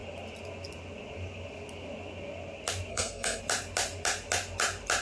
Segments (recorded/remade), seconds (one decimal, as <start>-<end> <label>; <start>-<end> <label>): 0.0-2.9 recorded; 2.9-3.4 remade; 3.4-5.0 recorded